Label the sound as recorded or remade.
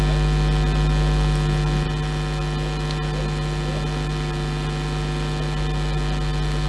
recorded